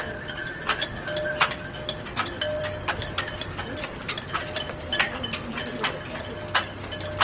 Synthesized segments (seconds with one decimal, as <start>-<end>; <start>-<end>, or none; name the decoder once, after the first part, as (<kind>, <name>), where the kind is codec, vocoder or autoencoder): 3.0-6.2 (vocoder, BigVGAN v2)